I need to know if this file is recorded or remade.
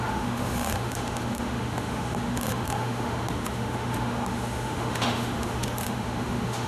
remade